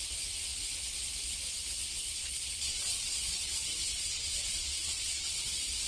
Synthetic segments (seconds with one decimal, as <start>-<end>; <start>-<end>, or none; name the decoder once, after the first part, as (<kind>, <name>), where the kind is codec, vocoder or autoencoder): 1.8-5.3 (vocoder, Vocos)